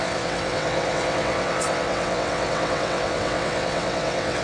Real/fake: fake